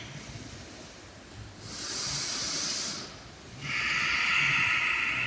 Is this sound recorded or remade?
recorded